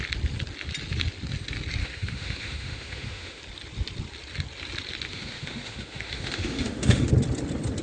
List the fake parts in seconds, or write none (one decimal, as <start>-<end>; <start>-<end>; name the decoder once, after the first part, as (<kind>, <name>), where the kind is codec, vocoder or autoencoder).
1.8-3.4 (autoencoder, DAC-VAE); 5.1-7.1